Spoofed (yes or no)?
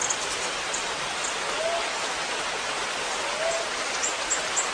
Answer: no